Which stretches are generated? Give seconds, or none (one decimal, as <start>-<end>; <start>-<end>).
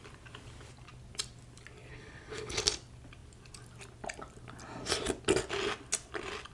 1.9-2.6